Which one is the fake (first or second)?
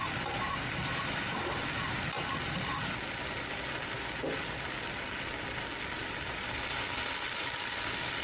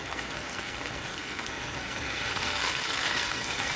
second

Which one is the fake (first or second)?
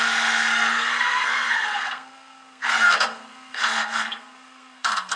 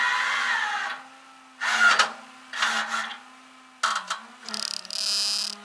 first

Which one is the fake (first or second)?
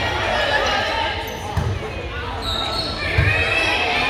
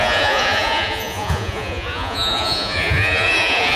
second